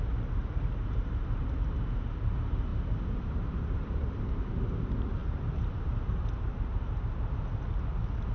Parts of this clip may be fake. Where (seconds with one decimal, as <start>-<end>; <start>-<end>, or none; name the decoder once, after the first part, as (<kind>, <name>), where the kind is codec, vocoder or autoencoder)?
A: 0.4-1.4 (vocoder, BigVGAN v2); 2.7-4.5; 5.2-7.1